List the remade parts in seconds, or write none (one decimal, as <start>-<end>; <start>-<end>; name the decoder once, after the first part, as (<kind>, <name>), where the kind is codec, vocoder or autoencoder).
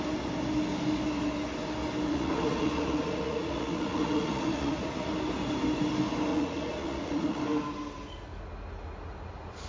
2.1-5.1 (vocoder, Vocos); 6.3-7.4